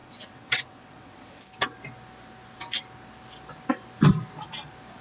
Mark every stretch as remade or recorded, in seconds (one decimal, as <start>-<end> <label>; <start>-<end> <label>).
0.0-1.4 remade; 1.4-5.0 recorded